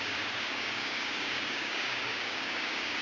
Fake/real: fake